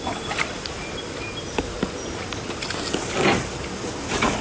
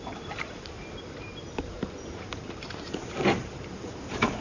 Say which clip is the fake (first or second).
second